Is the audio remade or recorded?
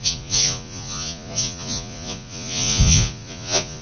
remade